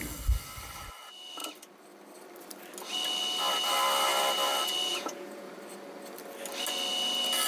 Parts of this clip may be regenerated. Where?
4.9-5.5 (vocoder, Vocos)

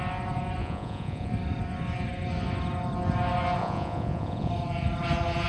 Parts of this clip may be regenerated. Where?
0.6-1.3 (vocoder, Vocos); 3.6-4.5

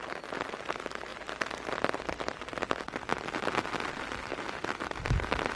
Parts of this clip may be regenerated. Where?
none

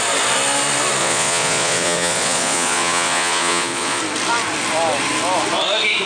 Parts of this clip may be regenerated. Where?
1.0-4.0 (vocoder, Vocos)

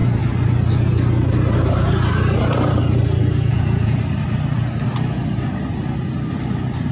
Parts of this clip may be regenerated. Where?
3.2-4.0 (vocoder, Vocos)

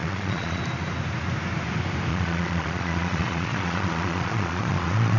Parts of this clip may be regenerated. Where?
0.0-0.6 (vocoder, Vocos); 2.1-5.2